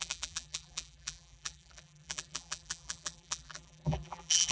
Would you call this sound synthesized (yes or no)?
yes